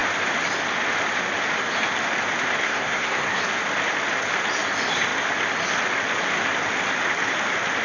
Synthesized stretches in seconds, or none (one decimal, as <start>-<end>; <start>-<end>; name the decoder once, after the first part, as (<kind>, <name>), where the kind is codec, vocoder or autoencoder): 2.6-3.4 (codec, SNAC)